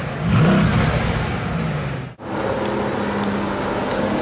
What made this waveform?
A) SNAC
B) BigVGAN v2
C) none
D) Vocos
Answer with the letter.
C